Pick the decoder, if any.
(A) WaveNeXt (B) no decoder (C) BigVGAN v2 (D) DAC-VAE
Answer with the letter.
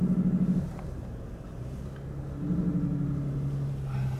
B